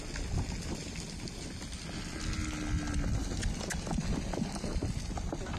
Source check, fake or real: real